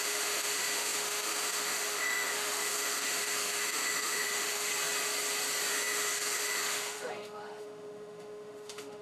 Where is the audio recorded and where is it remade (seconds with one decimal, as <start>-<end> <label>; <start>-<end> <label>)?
0.0-4.7 remade; 4.7-5.7 recorded; 5.7-9.0 remade